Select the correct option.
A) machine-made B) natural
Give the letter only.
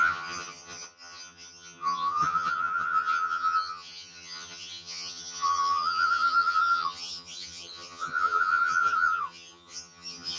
A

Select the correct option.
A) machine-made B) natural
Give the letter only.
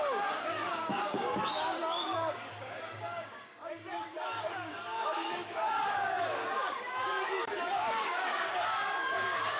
A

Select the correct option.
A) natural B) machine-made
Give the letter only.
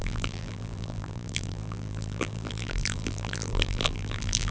B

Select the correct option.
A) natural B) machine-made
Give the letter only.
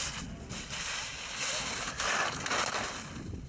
A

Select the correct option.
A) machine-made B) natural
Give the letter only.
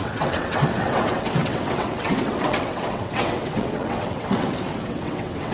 A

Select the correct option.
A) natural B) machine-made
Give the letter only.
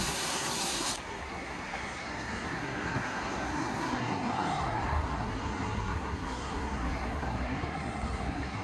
B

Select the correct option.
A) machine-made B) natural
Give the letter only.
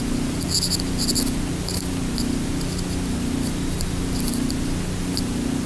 B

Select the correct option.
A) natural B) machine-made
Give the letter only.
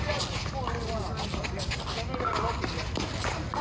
A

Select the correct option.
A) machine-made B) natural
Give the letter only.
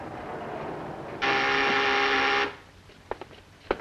B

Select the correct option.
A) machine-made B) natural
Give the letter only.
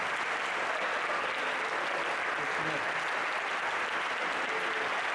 B